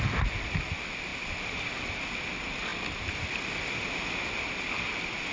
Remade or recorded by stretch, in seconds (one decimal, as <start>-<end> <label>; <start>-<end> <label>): 0.0-5.3 recorded